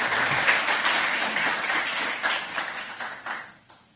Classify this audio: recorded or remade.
recorded